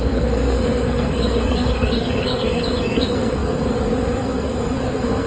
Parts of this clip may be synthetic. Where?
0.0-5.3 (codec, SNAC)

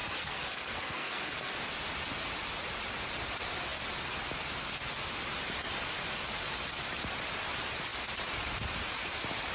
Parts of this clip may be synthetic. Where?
0.0-1.5 (codec, SNAC)

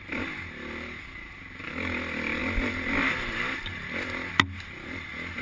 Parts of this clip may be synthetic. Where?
none

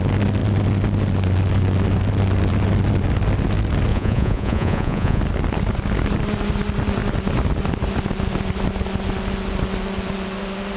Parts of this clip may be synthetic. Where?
3.9-5.2 (vocoder, Vocos)

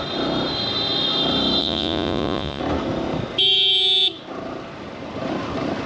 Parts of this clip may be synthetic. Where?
1.6-2.6 (vocoder, Vocos)

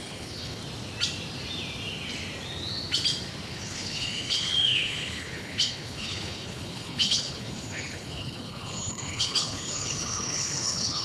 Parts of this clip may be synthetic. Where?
0.0-0.6 (codec, HILCodec); 3.5-11.0

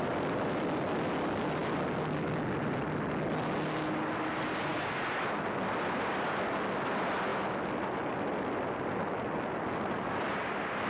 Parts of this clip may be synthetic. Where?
none